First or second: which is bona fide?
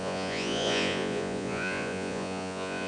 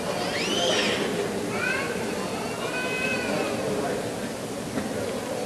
second